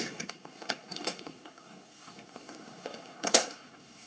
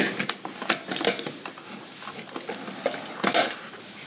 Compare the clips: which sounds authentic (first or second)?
second